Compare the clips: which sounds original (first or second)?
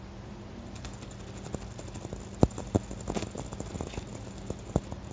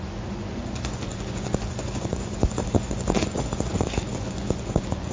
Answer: first